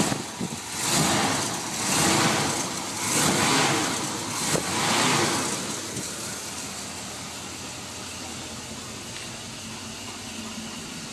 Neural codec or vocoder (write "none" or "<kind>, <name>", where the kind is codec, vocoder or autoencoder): none